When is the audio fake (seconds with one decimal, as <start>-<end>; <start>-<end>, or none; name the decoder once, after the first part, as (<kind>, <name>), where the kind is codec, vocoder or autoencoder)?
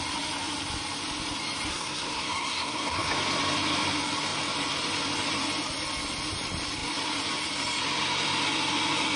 1.7-3.1 (codec, SNAC)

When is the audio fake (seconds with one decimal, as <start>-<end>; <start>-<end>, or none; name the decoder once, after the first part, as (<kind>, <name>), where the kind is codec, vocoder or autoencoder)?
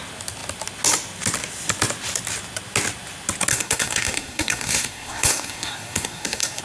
3.5-6.6 (codec, SNAC)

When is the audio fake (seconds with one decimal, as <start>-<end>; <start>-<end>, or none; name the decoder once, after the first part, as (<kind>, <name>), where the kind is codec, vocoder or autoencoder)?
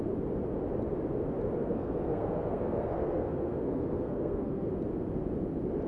1.6-4.7 (codec, SNAC)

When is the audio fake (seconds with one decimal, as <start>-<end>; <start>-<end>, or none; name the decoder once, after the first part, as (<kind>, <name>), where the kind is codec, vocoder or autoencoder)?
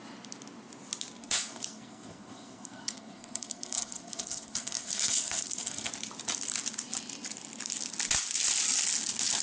1.2-5.9 (codec, SNAC)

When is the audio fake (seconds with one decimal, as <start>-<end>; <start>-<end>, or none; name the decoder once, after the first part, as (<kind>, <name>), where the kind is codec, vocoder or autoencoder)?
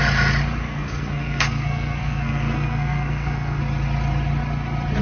0.6-3.6 (codec, SNAC)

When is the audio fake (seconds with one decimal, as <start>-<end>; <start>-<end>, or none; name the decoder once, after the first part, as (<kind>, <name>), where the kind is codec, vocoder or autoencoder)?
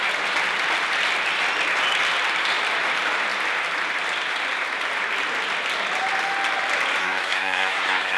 7.0-8.2 (codec, SNAC)